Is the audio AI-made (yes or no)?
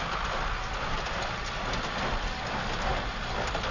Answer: no